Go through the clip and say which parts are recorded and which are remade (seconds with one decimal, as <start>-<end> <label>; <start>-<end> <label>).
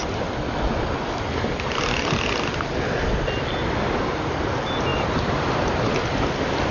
0.0-4.9 recorded; 4.9-5.8 remade; 5.8-6.7 recorded